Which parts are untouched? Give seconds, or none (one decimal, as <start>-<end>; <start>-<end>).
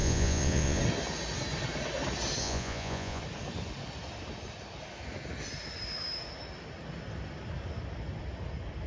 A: 0.8-2.4; 3.2-8.9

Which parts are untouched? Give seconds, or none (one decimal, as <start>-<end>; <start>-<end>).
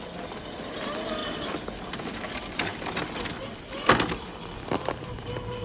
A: 0.0-5.6